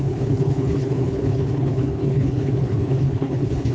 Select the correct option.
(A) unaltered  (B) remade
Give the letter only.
B